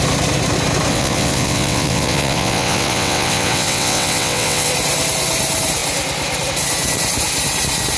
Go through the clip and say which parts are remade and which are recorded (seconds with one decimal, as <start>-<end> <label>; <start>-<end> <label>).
0.0-0.9 recorded; 0.9-4.7 remade; 4.7-8.0 recorded

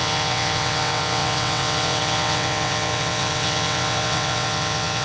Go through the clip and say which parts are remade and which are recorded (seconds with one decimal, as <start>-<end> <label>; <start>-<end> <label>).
0.0-5.0 remade